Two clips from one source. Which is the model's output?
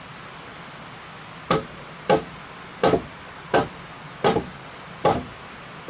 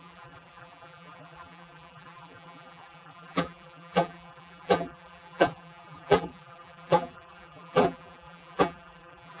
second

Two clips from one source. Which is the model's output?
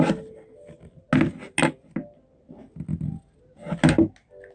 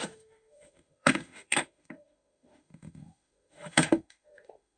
second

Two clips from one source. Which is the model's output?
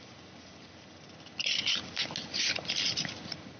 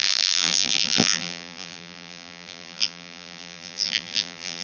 second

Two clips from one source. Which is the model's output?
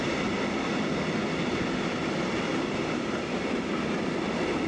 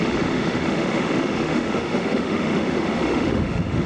second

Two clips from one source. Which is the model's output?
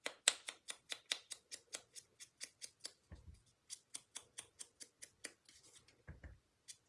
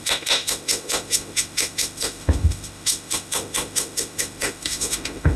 second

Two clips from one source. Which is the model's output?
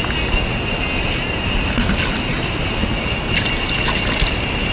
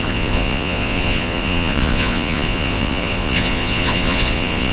second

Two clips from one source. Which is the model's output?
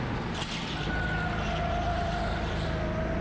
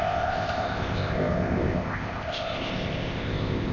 second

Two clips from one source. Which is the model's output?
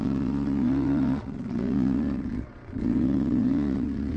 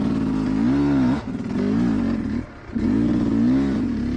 first